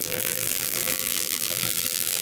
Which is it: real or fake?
fake